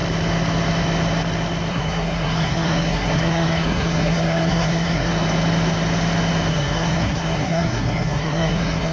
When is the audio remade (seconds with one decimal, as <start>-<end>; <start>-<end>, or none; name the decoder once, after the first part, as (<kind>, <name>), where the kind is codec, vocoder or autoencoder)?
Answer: 1.7-5.1 (codec, SNAC); 6.5-8.9